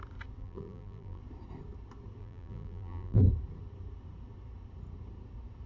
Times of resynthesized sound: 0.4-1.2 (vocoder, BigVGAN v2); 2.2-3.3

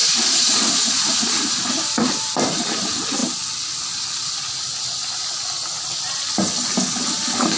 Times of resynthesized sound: 0.0-1.5 (vocoder, Vocos)